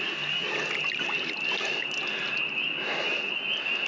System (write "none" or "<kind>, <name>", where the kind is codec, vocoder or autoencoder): none